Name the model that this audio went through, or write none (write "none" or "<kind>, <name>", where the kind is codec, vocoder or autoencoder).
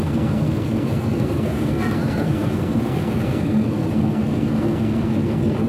codec, SNAC